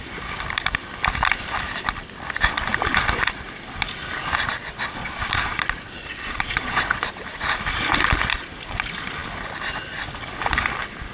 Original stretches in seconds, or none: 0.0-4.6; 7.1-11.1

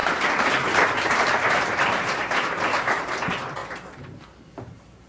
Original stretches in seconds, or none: 3.6-4.5

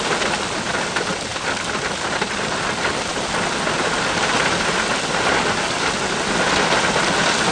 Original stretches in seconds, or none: 0.0-7.5

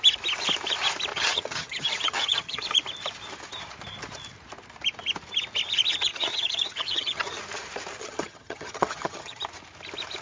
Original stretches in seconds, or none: 0.0-1.1; 2.6-6.1; 7.4-8.0; 9.4-10.2

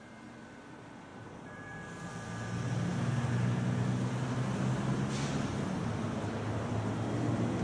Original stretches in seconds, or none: 0.0-1.1; 2.1-7.6

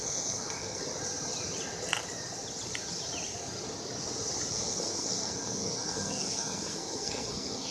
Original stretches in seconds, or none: 0.8-4.5